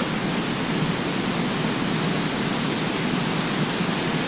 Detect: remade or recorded recorded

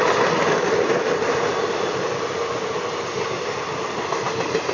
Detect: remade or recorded recorded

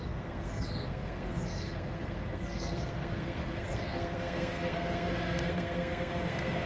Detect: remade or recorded remade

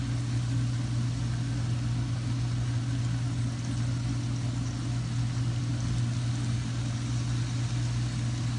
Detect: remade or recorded recorded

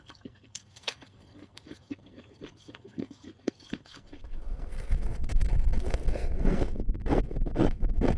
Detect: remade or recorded remade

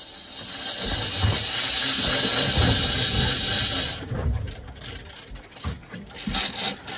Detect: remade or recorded recorded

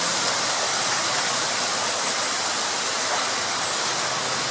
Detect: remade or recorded recorded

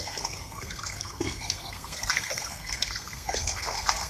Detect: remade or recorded remade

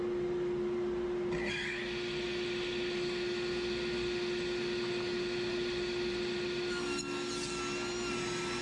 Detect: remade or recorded recorded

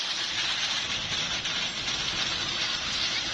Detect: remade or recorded recorded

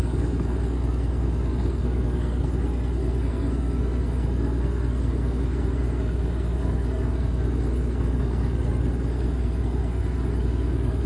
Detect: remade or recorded remade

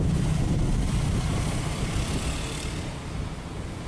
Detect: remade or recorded recorded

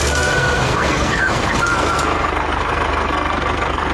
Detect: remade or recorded remade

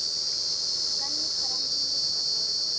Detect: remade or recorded recorded